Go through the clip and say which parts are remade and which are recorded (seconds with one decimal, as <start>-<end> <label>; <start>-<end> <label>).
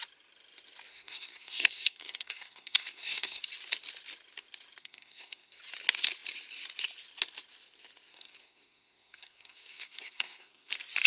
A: 0.0-0.9 recorded; 0.9-3.4 remade; 3.4-4.8 recorded; 4.8-5.6 remade; 5.6-8.1 recorded; 8.1-10.7 remade; 10.7-11.1 recorded